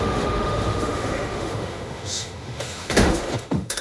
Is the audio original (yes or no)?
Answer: no